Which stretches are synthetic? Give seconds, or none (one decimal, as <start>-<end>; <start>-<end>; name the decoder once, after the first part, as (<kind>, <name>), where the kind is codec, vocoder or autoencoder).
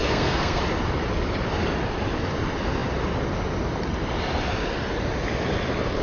0.0-0.6 (codec, SNAC)